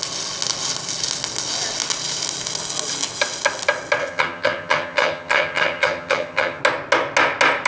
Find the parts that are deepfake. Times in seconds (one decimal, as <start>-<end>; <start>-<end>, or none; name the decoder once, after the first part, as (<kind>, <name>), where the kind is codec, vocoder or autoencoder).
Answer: 4.0-6.6 (vocoder, HiFi-GAN)